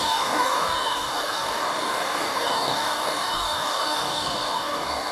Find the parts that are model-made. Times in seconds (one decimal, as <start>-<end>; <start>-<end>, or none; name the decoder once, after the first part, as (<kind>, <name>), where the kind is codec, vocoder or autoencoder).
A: 0.0-5.1 (codec, DAC)